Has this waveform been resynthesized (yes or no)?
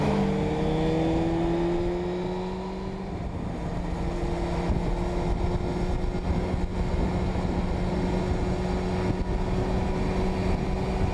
no